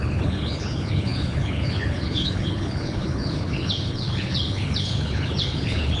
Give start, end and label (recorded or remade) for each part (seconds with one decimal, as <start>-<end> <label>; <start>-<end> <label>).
0.0-6.0 remade